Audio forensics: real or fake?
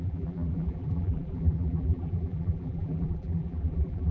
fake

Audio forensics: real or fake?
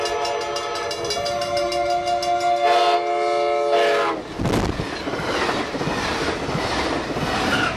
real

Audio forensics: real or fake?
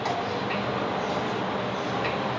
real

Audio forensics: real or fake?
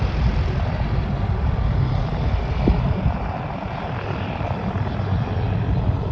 fake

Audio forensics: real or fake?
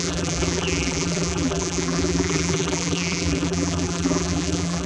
fake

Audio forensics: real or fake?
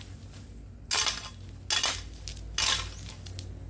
real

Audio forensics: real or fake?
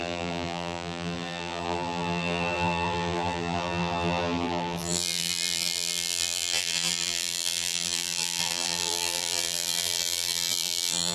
fake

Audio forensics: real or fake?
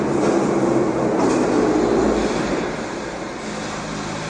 real